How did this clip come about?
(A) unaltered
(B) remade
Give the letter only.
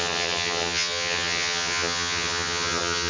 B